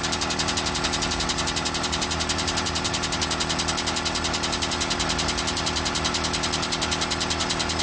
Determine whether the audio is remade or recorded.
recorded